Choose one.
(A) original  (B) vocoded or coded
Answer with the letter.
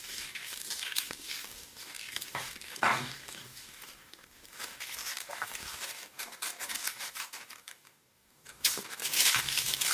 B